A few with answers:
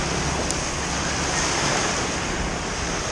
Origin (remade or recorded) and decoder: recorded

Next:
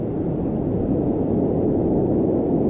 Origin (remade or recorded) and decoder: recorded